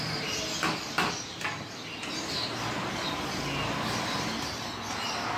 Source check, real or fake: real